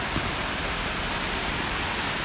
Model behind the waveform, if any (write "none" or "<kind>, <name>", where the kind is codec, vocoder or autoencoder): none